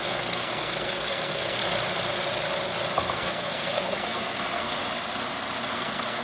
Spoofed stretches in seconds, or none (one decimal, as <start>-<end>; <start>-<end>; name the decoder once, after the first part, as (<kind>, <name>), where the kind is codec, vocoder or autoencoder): 0.0-1.6 (codec, SNAC); 3.1-4.8; 5.7-6.2